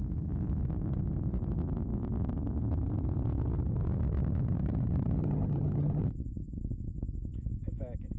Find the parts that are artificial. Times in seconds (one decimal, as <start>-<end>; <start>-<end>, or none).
5.2-6.0